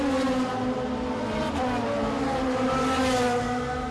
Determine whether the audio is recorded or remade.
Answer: recorded